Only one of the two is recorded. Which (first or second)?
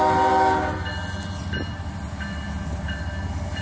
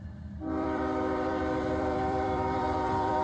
first